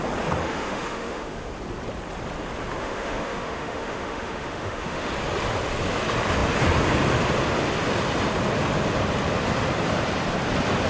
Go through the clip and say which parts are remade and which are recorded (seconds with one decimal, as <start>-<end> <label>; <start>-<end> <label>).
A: 0.0-0.4 recorded; 0.4-1.5 remade; 1.5-2.8 recorded; 2.8-5.1 remade; 5.1-10.9 recorded